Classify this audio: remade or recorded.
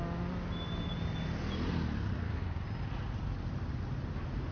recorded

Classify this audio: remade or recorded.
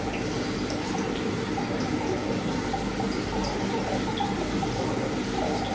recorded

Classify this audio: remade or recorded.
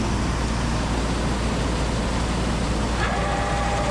recorded